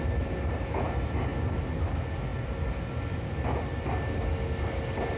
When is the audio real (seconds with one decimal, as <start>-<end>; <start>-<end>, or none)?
0.0-5.2